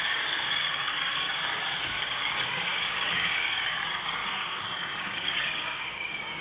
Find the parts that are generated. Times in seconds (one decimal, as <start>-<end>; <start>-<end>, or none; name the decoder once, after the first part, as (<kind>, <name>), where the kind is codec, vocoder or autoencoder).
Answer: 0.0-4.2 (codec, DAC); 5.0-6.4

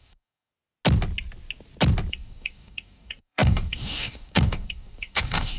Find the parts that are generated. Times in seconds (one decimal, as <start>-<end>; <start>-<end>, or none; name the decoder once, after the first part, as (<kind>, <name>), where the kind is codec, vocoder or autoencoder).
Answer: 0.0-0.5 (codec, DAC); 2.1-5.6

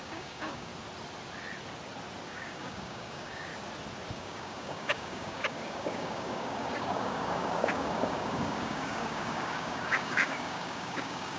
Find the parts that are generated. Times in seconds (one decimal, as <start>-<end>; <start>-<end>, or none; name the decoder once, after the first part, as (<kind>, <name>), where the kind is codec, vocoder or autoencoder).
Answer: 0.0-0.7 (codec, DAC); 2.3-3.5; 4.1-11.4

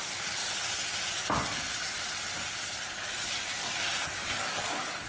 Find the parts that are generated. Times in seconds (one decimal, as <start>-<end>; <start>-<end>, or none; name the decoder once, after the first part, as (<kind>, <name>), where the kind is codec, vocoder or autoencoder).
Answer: 4.2-5.1 (codec, DAC)